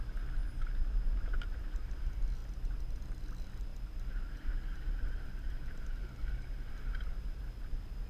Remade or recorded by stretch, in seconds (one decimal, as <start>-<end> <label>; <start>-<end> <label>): 0.0-8.1 recorded